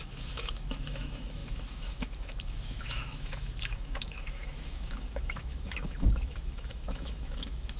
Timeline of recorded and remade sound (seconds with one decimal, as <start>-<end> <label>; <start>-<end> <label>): 0.0-7.8 remade